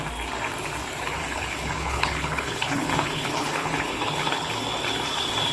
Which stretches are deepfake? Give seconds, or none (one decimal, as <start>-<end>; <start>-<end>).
1.2-4.5